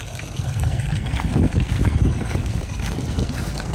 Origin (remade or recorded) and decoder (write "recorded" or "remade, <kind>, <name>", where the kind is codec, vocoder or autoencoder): remade, codec, SNAC